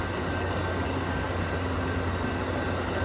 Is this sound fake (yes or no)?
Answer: no